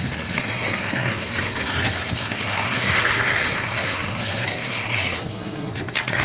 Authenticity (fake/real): fake